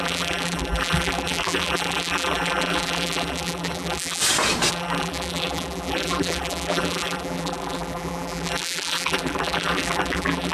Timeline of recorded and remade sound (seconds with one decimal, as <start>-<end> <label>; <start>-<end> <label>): 0.0-4.2 remade; 4.2-4.7 recorded; 4.7-10.5 remade